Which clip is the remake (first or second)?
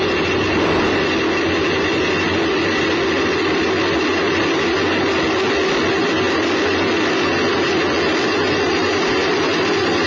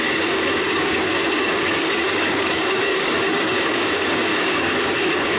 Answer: second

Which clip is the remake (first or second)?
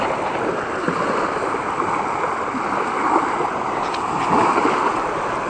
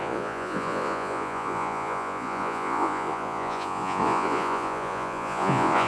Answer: second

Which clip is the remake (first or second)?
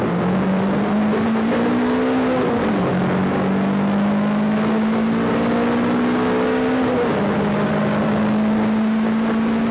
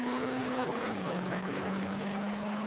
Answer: second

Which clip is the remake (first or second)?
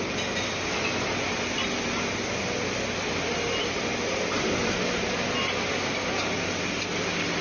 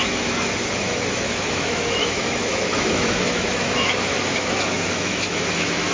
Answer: second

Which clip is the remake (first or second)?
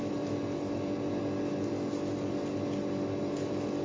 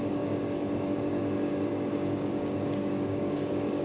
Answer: second